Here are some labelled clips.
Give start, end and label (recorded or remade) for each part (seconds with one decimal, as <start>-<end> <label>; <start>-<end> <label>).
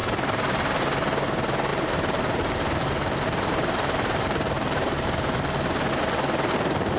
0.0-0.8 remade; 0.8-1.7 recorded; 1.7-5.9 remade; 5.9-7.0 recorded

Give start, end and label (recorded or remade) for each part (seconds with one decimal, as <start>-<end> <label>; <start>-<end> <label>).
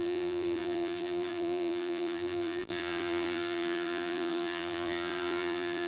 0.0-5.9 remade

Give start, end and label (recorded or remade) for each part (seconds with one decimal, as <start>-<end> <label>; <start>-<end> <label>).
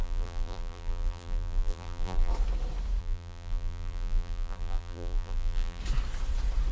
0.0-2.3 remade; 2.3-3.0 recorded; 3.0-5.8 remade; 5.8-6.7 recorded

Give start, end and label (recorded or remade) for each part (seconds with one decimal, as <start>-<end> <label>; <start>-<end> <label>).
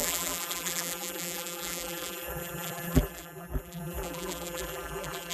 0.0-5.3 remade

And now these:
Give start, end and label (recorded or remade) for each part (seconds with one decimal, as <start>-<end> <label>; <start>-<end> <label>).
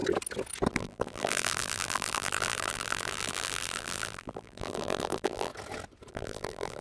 0.0-0.7 recorded; 0.7-5.5 remade; 5.5-6.1 recorded; 6.1-6.8 remade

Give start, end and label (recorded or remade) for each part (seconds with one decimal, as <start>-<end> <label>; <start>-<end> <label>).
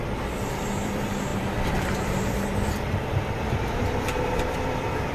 0.0-5.1 remade